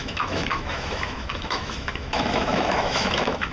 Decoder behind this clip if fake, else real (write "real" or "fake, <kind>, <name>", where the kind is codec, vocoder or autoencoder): fake, autoencoder, DAC-VAE